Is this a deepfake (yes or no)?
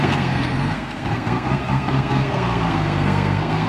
yes